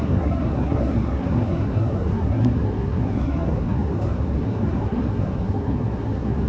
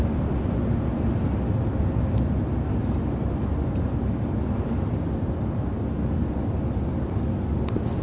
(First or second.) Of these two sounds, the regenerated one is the first